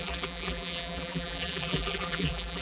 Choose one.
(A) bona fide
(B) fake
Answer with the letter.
B